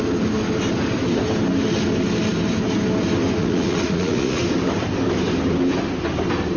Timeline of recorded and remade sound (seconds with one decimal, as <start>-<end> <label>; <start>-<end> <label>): 0.0-3.4 recorded; 3.4-4.4 remade; 4.4-6.6 recorded